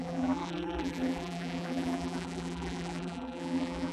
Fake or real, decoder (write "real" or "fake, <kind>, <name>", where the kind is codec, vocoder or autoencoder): fake, vocoder, BigVGAN v2